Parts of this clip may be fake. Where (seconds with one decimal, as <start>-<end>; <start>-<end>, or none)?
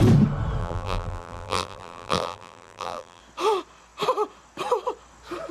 0.6-3.2